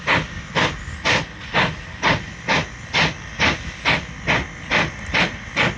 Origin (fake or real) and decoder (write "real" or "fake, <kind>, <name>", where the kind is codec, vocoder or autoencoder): real